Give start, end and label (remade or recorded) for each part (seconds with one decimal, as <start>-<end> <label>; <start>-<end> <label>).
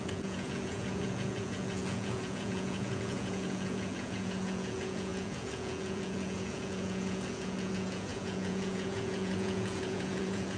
0.0-10.6 remade